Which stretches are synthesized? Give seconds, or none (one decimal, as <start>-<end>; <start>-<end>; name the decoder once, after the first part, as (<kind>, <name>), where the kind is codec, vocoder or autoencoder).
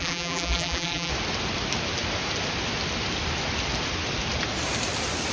0.0-1.1 (vocoder, BigVGAN v2)